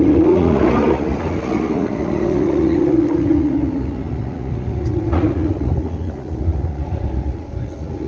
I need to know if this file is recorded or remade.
remade